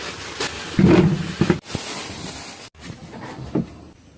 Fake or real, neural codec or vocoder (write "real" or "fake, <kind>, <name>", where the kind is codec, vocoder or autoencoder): real